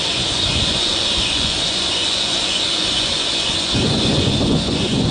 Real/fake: fake